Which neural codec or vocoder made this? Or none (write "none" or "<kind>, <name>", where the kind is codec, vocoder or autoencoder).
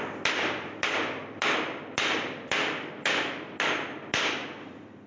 vocoder, BigVGAN v2